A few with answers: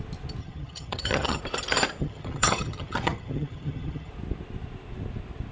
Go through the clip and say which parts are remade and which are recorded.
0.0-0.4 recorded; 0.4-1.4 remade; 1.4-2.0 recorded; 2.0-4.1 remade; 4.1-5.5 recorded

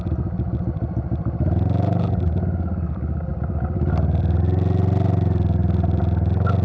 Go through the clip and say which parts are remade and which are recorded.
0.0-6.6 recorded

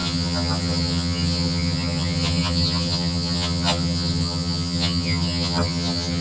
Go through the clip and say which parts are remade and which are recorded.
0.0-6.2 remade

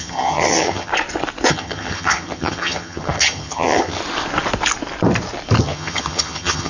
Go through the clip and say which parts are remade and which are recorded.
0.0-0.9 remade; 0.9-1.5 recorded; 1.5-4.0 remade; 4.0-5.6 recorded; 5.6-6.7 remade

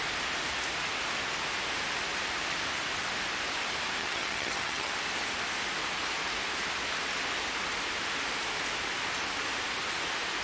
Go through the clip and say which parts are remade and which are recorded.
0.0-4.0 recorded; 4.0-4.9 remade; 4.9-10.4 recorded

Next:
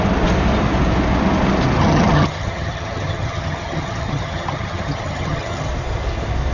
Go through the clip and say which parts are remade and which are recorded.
0.0-1.8 recorded; 1.8-5.7 remade; 5.7-6.5 recorded

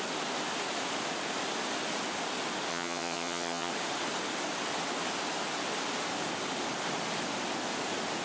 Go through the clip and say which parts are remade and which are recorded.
0.0-2.7 recorded; 2.7-3.7 remade; 3.7-8.2 recorded

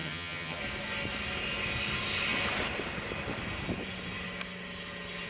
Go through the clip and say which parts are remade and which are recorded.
0.0-0.6 remade; 0.6-5.3 recorded